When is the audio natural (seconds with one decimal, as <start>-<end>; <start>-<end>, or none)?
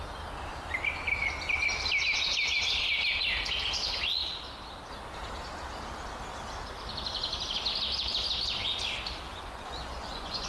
0.0-9.3